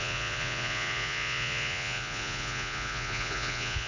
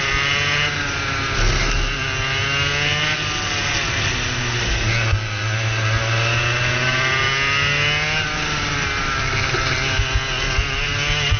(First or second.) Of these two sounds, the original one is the second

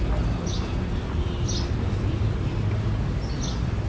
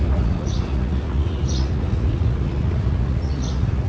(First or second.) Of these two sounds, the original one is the first